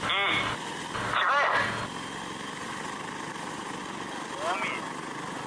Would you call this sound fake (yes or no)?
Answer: no